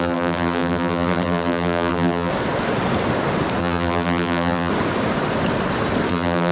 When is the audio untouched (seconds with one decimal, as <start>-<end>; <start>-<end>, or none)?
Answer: 2.3-3.6; 4.7-6.1